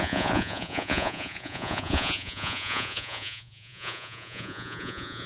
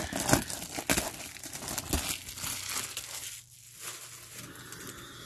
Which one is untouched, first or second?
second